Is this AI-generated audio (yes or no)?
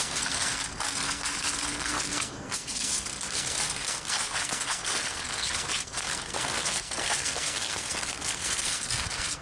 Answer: yes